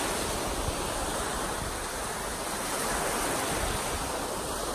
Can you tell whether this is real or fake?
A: real